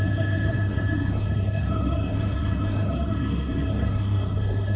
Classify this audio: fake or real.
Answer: fake